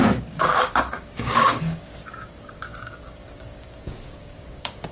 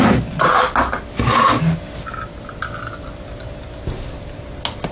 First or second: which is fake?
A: first